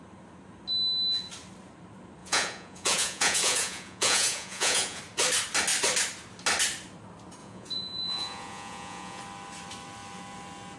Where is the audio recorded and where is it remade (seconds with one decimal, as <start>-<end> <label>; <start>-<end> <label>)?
0.0-2.2 recorded; 2.2-5.0 remade; 5.0-7.4 recorded; 7.4-9.2 remade; 9.2-10.8 recorded